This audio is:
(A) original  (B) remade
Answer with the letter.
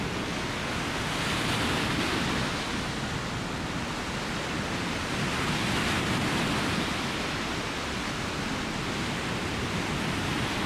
A